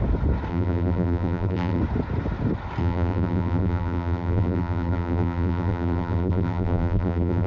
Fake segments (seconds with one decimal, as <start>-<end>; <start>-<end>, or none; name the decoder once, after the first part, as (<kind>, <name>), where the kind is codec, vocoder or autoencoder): 0.5-1.8 (vocoder, BigVGAN v2); 2.8-7.5